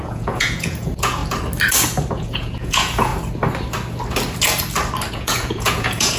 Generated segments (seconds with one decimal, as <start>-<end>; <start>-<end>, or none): 0.0-1.2; 2.1-3.1; 5.1-6.2